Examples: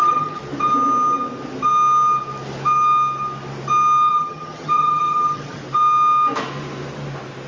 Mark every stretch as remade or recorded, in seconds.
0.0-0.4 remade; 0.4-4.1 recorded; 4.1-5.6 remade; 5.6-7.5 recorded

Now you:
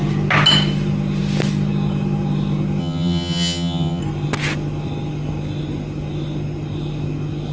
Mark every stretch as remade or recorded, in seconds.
0.0-2.8 recorded; 2.8-4.0 remade; 4.0-7.5 recorded

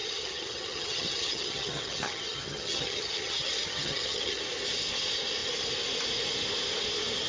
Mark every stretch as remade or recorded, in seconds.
0.0-4.4 remade; 4.4-7.3 recorded

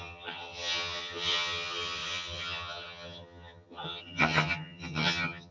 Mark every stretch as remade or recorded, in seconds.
0.0-5.5 remade

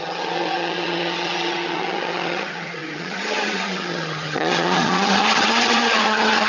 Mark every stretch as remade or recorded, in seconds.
0.0-6.5 remade

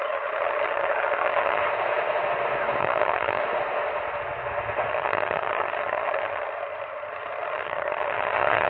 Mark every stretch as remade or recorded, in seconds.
0.0-1.6 remade; 1.6-2.8 recorded; 2.8-3.4 remade; 3.4-4.9 recorded; 4.9-8.7 remade

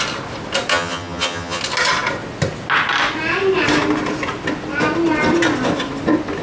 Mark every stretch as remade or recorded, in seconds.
0.0-0.7 recorded; 0.7-1.6 remade; 1.6-6.4 recorded

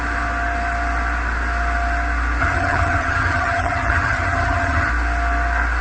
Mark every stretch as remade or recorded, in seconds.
0.0-2.4 recorded; 2.4-4.9 remade; 4.9-5.8 recorded